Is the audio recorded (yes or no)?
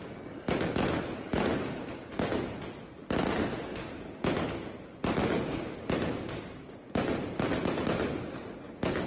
yes